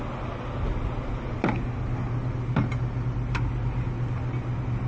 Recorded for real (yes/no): yes